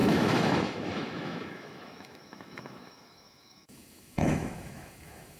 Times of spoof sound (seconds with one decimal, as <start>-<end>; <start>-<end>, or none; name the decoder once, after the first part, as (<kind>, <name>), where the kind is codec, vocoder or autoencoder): 0.0-5.4 (autoencoder, DAC-VAE)

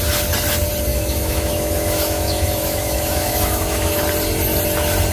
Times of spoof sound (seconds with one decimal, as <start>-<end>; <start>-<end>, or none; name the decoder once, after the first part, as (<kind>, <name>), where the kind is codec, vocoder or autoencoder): 0.9-4.0 (autoencoder, DAC-VAE)

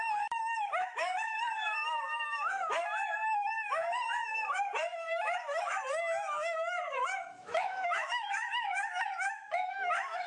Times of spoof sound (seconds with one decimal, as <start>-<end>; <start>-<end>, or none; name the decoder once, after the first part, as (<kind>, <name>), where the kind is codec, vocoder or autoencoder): 0.0-10.3 (autoencoder, DAC-VAE)

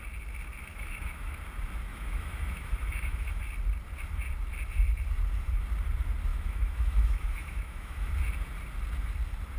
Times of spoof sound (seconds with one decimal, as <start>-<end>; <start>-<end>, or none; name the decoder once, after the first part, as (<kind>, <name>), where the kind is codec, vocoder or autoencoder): 0.7-1.4 (autoencoder, DAC-VAE); 1.9-3.4; 6.3-8.1

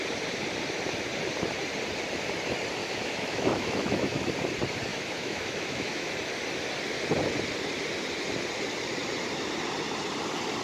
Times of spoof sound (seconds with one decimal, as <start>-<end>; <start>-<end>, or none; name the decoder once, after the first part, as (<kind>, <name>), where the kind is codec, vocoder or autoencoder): 2.8-4.3 (autoencoder, DAC-VAE); 4.9-6.1

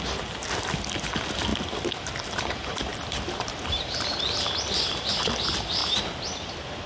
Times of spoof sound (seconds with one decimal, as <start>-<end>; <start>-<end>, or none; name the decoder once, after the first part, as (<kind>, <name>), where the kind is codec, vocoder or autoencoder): none

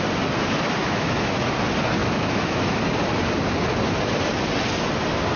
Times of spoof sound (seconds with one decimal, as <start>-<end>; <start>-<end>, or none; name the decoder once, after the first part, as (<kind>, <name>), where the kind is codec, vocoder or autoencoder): 0.8-1.3 (autoencoder, DAC-VAE); 2.0-2.8

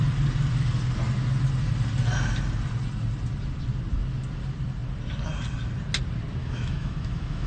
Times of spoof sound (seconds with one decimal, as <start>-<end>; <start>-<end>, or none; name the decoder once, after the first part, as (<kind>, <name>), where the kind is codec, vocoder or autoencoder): 6.4-7.5 (autoencoder, DAC-VAE)